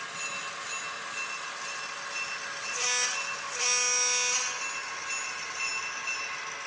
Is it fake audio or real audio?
real